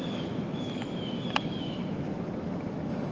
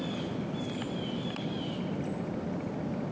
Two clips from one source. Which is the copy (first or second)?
first